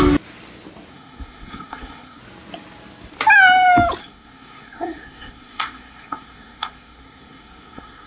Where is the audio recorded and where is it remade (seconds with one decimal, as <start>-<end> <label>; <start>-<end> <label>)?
0.0-0.9 recorded; 0.9-2.2 remade; 2.2-4.0 recorded; 4.0-8.1 remade

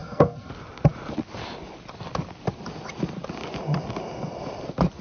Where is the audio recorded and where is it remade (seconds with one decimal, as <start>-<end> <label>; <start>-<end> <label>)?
0.0-0.5 remade; 0.5-5.0 recorded